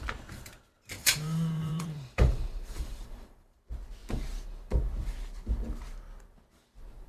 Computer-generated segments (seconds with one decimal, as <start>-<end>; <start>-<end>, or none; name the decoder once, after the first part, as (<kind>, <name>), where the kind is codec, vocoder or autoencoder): 1.0-3.6 (vocoder, BigVGAN v2)